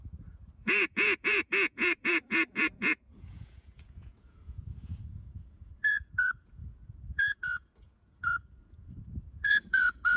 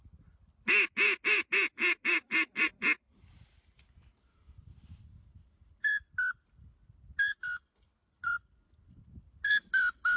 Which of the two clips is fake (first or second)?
first